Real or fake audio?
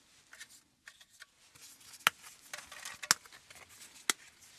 real